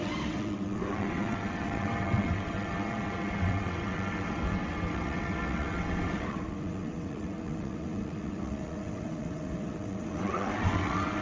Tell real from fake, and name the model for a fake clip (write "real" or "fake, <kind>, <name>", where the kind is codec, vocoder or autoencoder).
fake, vocoder, WaveNeXt